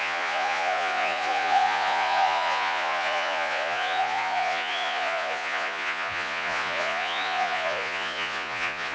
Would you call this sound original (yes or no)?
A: no